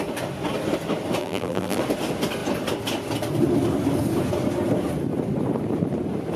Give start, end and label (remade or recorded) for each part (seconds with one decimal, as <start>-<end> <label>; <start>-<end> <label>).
0.0-1.2 recorded; 1.2-1.8 remade; 1.8-6.4 recorded